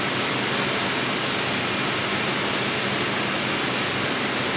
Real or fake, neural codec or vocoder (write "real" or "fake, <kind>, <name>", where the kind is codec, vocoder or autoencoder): real